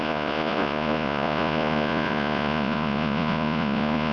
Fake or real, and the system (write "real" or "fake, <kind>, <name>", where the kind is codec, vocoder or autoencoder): fake, vocoder, Vocos